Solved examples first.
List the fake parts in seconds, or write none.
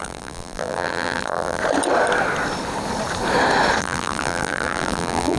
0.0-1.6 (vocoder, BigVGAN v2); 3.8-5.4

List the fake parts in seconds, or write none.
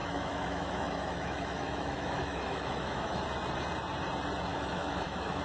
0.0-3.2 (autoencoder, DAC-VAE); 4.5-5.4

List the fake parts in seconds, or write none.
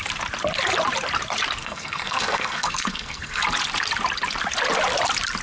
1.6-3.4 (codec, SNAC)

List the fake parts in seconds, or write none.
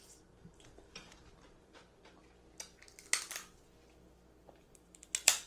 0.0-2.2 (vocoder, BigVGAN v2); 4.5-5.5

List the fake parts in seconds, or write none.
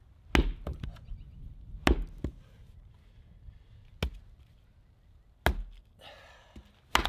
none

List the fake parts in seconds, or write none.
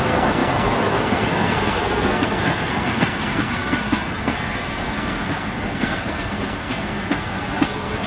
0.0-8.1 (codec, SNAC)